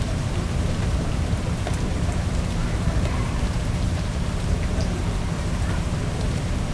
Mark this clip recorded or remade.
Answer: remade